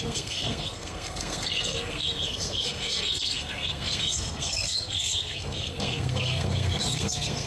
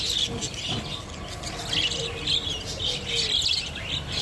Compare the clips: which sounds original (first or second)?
second